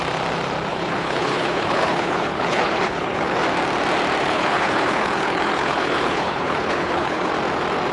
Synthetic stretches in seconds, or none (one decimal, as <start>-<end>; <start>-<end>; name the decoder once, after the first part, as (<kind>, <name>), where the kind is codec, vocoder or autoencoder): 0.7-3.4 (codec, HILCodec); 4.2-7.3